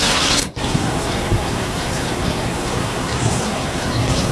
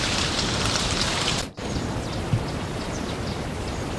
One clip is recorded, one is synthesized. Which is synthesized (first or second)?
first